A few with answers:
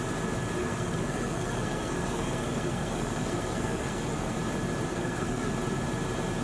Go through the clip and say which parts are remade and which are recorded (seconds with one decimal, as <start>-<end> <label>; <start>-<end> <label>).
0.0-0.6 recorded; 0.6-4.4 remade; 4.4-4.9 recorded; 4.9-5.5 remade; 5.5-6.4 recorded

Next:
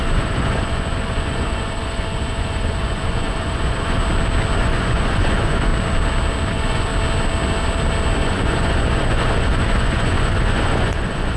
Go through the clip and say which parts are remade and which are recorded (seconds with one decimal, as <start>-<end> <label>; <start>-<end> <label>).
0.0-4.0 remade; 4.0-4.6 recorded; 4.6-5.7 remade; 5.7-6.5 recorded; 6.5-6.9 remade; 6.9-8.2 recorded; 8.2-11.4 remade

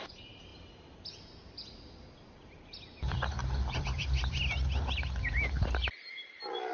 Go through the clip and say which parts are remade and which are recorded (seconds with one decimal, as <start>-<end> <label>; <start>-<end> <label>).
0.0-0.5 recorded; 0.5-4.5 remade; 4.5-6.7 recorded